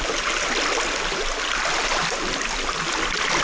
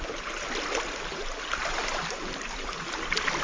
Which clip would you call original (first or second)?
first